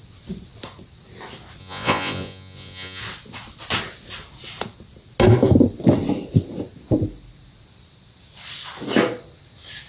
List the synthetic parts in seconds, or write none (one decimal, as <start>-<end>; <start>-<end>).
1.6-3.0